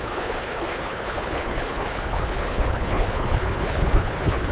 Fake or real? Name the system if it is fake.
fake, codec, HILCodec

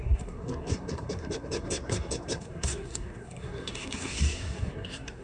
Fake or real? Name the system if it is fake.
fake, codec, SNAC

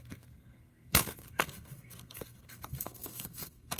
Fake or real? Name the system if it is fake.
fake, codec, SNAC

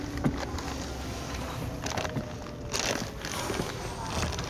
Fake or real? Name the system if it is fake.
real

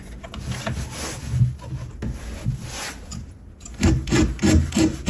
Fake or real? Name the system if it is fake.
real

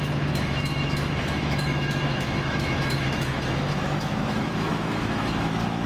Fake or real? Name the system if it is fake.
fake, autoencoder, DAC-VAE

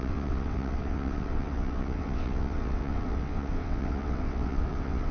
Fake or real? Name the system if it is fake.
fake, vocoder, WaveNeXt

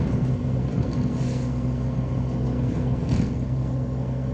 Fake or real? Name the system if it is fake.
fake, codec, SNAC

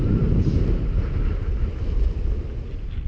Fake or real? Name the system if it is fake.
real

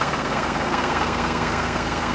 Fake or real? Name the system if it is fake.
fake, codec, SNAC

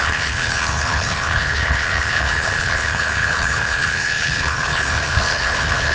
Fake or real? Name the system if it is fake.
fake, codec, HILCodec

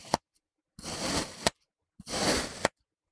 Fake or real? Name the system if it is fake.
real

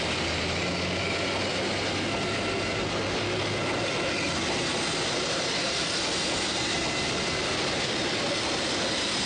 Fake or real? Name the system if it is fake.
real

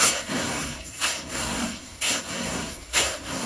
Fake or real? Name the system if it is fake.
fake, codec, SNAC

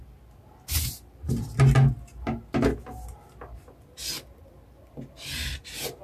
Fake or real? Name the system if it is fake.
real